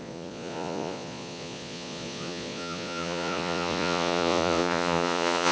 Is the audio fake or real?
fake